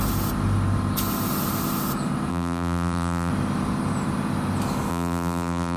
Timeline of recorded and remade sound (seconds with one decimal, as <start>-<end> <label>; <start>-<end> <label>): 0.0-2.3 recorded; 2.3-3.3 remade; 3.3-4.9 recorded; 4.9-5.8 remade